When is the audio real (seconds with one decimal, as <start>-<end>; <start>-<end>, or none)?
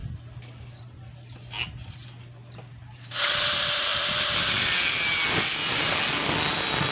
0.0-6.9